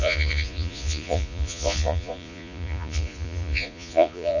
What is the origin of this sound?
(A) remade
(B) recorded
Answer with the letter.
A